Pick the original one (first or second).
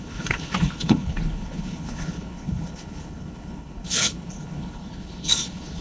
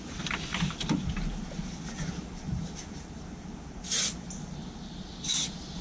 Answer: second